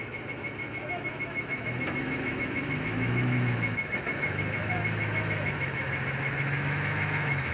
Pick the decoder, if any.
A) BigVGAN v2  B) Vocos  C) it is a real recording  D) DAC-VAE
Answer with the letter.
D